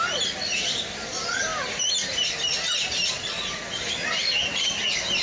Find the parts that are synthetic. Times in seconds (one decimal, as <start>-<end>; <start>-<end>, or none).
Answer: none